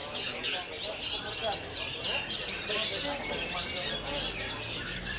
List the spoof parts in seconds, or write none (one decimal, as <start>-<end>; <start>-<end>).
none